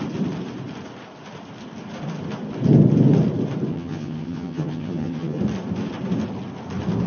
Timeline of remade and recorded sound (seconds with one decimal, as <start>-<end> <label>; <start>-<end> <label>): 0.0-3.7 recorded; 3.7-5.4 remade; 5.4-7.1 recorded